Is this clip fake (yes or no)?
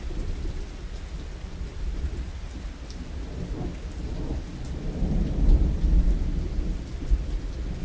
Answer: no